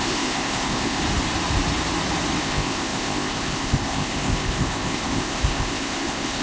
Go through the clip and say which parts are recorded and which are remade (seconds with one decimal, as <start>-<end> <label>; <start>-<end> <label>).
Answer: 0.0-1.0 remade; 1.0-2.4 recorded; 2.4-6.4 remade

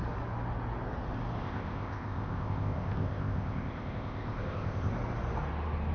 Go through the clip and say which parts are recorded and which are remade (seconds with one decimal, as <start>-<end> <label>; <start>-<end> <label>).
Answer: 0.0-1.4 recorded; 1.4-4.9 remade; 4.9-5.9 recorded

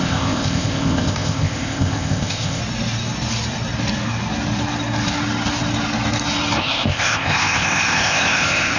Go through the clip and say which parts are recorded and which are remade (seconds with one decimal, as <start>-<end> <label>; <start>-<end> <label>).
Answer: 0.0-2.6 remade; 2.6-6.6 recorded; 6.6-8.8 remade

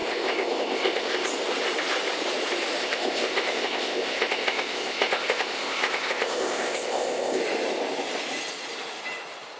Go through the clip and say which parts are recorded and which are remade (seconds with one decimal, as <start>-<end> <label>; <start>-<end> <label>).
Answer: 0.0-1.3 remade; 1.3-2.8 recorded; 2.8-7.4 remade; 7.4-9.6 recorded

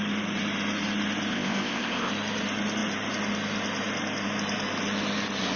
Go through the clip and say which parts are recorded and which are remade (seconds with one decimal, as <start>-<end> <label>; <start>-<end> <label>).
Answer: 0.0-1.3 recorded; 1.3-2.1 remade; 2.1-5.6 recorded

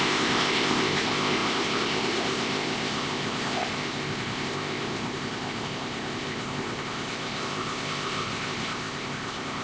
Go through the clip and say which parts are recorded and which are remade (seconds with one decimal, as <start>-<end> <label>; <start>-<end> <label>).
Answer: 0.0-9.6 remade

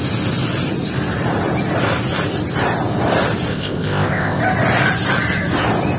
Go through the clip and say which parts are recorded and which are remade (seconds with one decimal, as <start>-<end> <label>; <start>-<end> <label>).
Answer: 0.0-3.5 recorded; 3.5-4.4 remade; 4.4-6.0 recorded